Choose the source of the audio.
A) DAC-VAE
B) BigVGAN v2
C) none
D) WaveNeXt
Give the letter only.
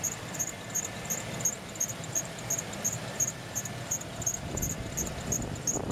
B